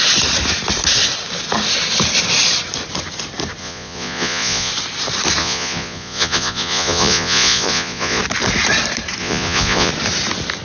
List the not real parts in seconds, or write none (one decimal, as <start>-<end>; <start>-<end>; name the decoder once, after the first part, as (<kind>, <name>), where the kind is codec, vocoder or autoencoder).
3.6-4.7 (vocoder, Vocos); 5.4-8.2; 9.2-9.9